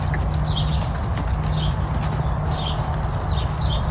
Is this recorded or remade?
recorded